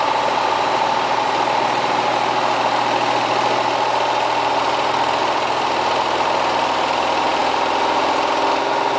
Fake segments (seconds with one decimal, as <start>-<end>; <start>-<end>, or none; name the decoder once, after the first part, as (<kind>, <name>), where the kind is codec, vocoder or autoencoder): none